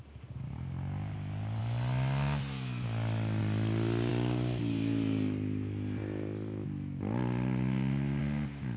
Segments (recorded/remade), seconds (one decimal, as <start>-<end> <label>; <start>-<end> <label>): 0.0-8.8 recorded